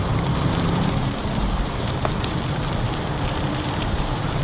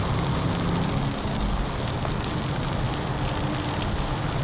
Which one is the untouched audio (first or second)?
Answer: second